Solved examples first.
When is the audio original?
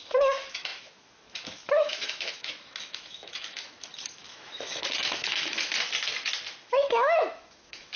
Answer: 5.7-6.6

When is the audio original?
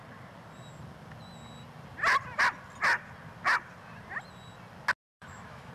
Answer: 0.0-5.1